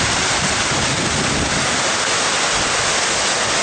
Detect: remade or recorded recorded